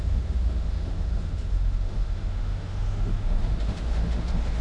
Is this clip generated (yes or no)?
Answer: yes